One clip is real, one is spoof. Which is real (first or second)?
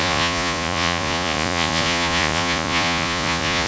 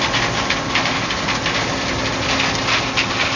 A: second